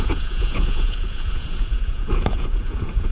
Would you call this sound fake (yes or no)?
yes